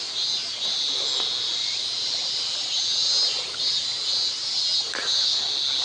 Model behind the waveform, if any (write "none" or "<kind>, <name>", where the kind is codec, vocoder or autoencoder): none